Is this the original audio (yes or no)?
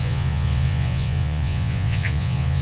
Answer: no